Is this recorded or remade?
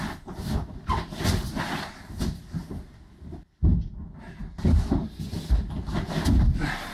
recorded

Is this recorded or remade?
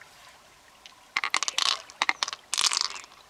recorded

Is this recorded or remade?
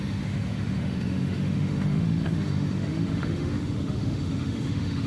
remade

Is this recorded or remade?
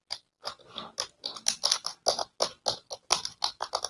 recorded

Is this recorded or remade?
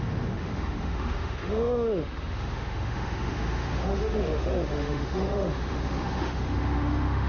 remade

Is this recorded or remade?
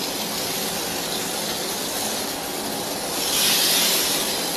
recorded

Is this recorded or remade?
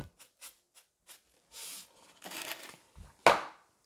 recorded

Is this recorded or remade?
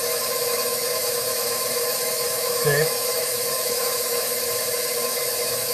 remade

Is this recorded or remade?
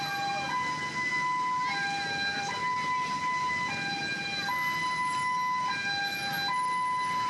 recorded